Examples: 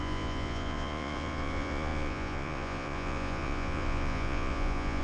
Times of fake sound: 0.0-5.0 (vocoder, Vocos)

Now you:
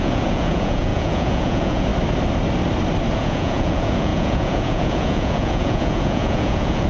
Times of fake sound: 0.0-1.9 (vocoder, Vocos); 3.1-6.9

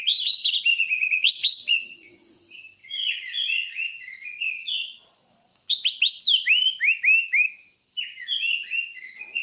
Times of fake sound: 0.7-2.4 (vocoder, Vocos); 2.8-5.5

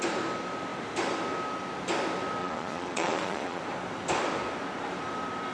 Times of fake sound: 2.4-3.6 (vocoder, Vocos)